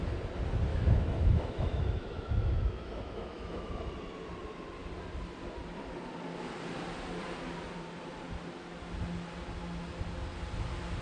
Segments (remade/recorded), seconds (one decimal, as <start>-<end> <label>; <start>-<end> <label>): 0.0-0.7 recorded; 0.7-3.7 remade; 3.7-11.0 recorded